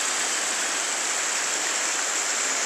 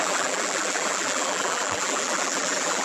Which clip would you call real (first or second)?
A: first